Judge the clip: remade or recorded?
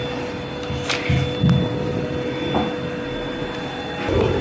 recorded